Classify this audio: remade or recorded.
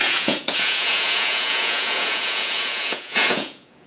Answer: remade